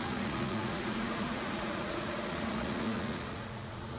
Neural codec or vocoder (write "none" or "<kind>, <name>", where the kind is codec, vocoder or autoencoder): vocoder, Vocos